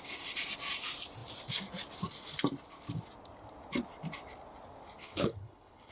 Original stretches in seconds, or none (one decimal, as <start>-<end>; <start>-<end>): 0.0-5.0